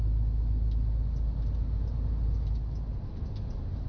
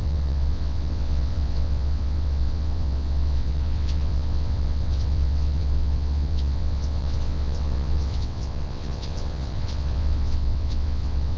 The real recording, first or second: first